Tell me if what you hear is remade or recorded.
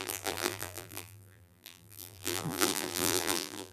remade